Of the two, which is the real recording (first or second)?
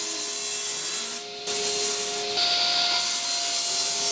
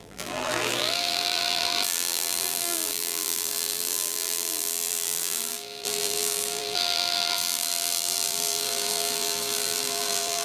first